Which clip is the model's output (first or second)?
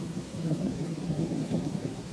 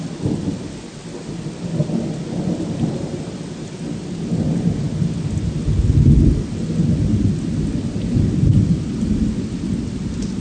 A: first